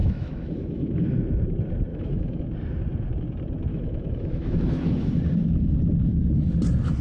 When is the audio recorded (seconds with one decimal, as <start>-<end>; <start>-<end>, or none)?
1.2-1.9; 2.4-3.7; 5.2-7.0